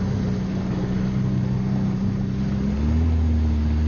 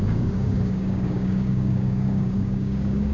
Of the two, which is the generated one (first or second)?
second